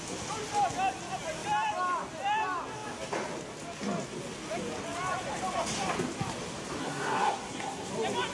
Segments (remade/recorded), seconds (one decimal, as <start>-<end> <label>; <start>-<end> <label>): 0.0-6.8 recorded; 6.8-7.9 remade; 7.9-8.3 recorded